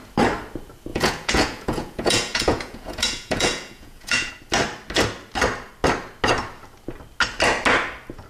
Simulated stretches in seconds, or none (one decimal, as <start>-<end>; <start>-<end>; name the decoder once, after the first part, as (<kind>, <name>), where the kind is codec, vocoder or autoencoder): 0.9-4.3 (vocoder, Vocos)